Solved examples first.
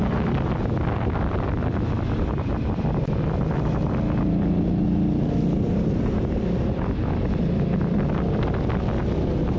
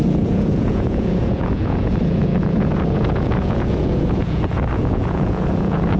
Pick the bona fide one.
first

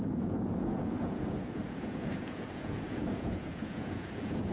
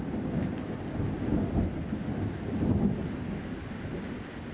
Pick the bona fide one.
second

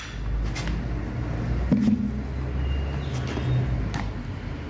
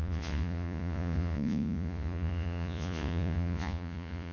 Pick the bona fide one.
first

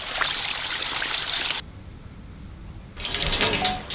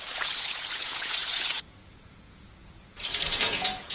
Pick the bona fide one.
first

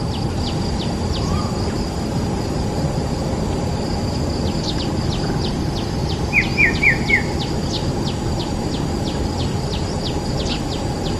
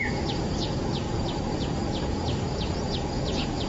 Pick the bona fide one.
first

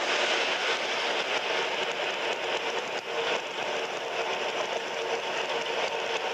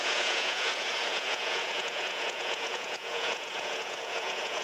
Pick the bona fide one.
first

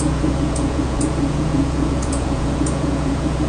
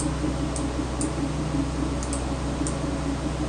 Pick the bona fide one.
second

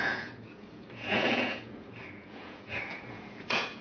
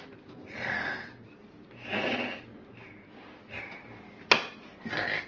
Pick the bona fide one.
second